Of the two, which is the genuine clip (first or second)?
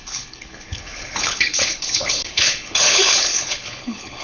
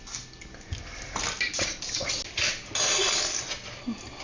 second